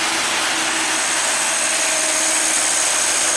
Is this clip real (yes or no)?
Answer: yes